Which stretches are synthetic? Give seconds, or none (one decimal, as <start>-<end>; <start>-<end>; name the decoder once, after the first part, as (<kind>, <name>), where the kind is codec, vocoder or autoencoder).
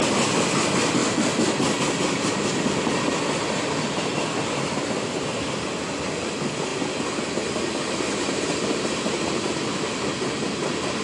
none